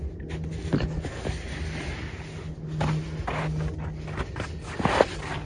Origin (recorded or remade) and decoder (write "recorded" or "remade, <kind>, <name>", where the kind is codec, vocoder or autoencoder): recorded